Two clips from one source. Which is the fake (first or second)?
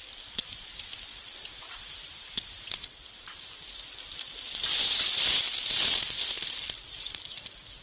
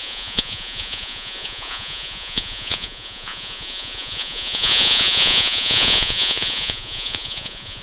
second